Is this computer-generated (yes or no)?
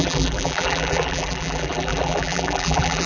yes